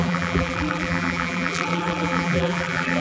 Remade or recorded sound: remade